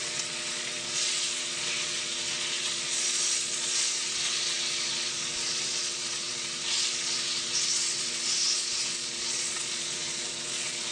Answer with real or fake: fake